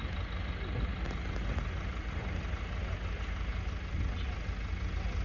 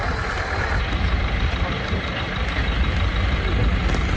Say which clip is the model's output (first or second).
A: second